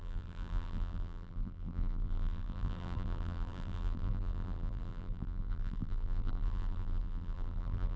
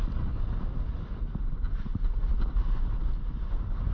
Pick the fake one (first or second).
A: first